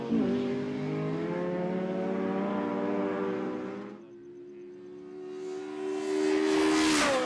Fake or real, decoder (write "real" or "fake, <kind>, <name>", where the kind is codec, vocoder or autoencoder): real